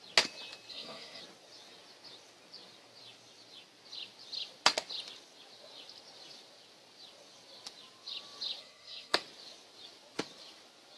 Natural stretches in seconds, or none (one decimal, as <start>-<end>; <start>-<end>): 0.0-0.7; 1.2-8.6; 9.2-11.0